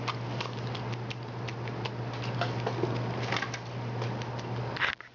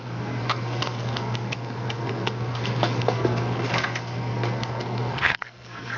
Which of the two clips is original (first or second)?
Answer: first